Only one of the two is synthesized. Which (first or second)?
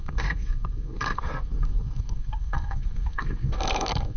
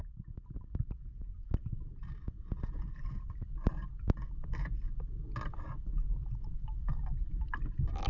first